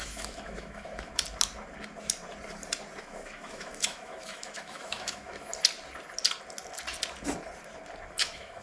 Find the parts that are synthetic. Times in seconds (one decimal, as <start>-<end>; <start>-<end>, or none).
0.0-1.1; 3.0-5.5; 8.1-8.6